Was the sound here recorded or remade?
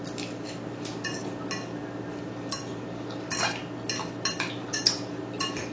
recorded